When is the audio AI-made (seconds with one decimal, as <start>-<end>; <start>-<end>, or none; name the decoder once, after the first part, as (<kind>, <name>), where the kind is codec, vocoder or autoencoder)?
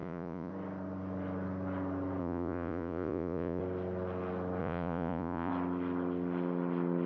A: 0.0-0.5 (vocoder, Vocos); 2.2-3.6; 4.6-5.5